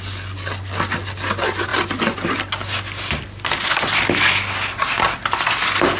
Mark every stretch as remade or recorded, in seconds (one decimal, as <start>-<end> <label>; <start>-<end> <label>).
0.0-6.0 recorded